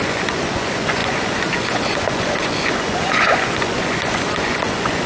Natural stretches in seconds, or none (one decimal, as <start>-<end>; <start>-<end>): none